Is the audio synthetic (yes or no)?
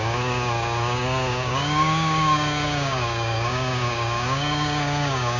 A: yes